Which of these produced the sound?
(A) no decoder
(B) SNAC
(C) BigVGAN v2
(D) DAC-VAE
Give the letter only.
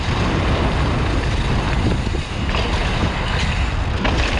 A